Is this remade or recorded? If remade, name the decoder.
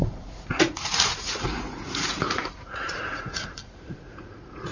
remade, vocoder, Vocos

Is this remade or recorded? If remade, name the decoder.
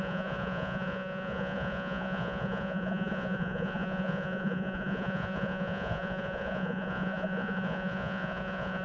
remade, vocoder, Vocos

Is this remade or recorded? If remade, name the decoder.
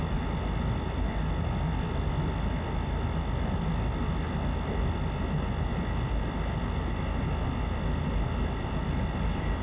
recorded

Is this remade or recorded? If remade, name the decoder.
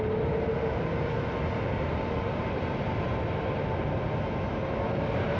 recorded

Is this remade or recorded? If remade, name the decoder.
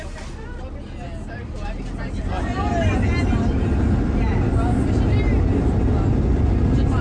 recorded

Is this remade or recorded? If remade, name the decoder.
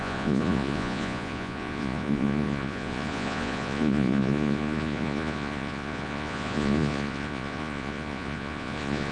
remade, vocoder, Vocos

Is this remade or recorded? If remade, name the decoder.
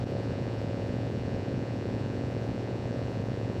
remade, vocoder, Vocos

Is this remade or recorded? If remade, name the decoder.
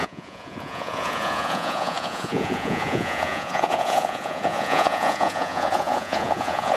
remade, vocoder, Vocos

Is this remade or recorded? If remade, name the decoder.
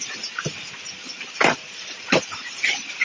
recorded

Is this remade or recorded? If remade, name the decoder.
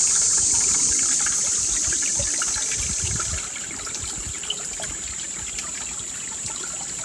recorded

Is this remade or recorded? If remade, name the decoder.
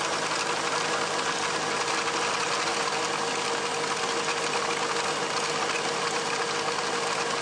recorded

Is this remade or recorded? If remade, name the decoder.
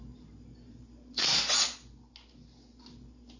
recorded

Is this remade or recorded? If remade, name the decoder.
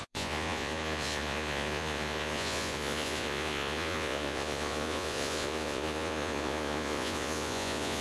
remade, vocoder, Vocos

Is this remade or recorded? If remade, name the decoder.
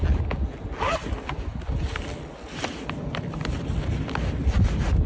recorded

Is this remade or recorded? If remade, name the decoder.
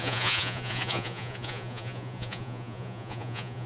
remade, vocoder, Vocos